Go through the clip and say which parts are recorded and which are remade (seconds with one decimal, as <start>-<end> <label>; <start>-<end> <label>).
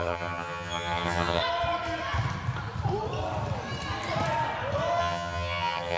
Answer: 0.0-1.4 remade; 1.4-5.0 recorded; 5.0-6.0 remade